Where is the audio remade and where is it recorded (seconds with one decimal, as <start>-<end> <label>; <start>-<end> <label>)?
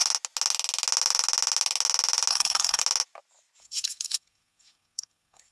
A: 0.0-2.3 recorded; 2.3-2.8 remade; 2.8-3.6 recorded; 3.6-5.5 remade